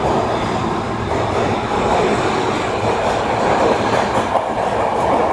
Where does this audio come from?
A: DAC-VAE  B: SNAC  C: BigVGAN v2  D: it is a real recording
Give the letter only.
D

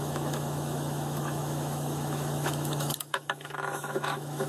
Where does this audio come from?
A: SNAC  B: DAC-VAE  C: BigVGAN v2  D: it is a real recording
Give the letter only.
B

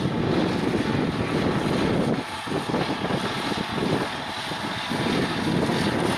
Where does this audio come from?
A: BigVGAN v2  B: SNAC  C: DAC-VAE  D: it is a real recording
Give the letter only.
D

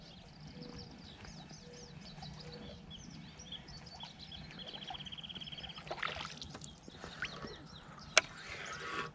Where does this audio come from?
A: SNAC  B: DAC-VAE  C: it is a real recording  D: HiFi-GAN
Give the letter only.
C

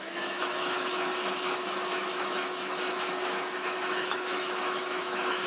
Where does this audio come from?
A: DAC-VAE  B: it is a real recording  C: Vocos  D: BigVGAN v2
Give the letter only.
A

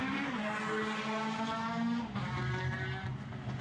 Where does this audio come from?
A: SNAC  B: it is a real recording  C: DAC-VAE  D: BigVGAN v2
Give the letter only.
B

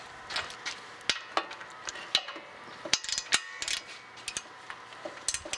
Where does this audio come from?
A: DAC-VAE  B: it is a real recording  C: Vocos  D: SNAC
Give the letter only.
B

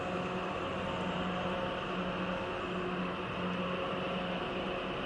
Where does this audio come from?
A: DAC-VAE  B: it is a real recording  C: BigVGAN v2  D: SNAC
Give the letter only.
B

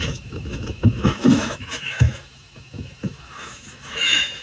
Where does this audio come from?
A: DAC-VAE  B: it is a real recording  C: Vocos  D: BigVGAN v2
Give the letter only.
A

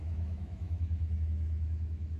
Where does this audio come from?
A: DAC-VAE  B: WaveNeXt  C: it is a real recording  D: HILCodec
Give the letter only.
A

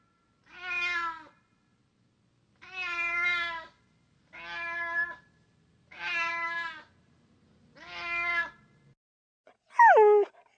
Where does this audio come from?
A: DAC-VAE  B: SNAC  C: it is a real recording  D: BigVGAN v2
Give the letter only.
C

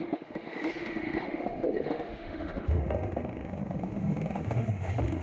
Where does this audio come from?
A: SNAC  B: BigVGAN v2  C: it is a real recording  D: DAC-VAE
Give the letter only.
D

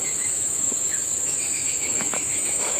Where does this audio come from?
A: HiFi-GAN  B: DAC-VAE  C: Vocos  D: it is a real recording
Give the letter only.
B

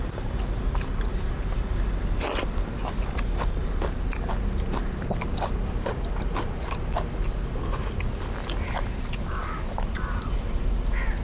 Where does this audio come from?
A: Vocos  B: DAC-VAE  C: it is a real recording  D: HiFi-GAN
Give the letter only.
C